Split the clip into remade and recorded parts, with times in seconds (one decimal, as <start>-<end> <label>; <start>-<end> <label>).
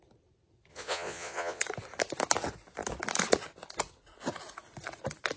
0.0-0.7 recorded; 0.7-1.6 remade; 1.6-5.4 recorded